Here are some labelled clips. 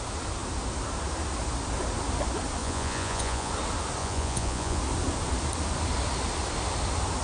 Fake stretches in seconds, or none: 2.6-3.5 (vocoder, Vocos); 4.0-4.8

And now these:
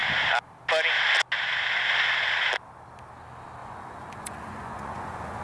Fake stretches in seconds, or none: 3.6-5.4 (vocoder, Vocos)

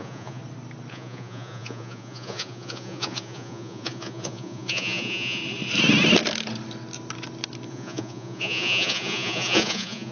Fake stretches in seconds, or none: 0.0-0.4 (vocoder, Vocos); 0.9-5.4; 7.7-10.1

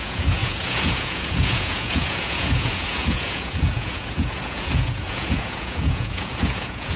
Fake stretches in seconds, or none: 0.0-7.0 (vocoder, Vocos)

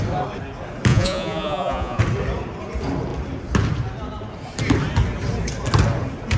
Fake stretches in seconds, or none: 0.9-2.0 (vocoder, Vocos)

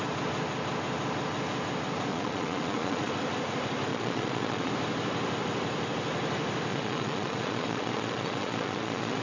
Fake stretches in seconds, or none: 2.1-3.1 (vocoder, Vocos); 3.9-4.7; 6.7-9.2

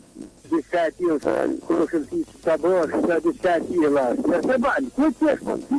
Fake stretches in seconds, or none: 0.0-0.4 (vocoder, Vocos); 1.2-1.8; 5.3-5.8